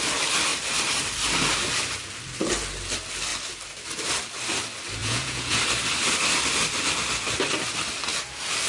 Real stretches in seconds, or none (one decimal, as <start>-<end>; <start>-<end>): 0.0-5.0; 5.6-8.7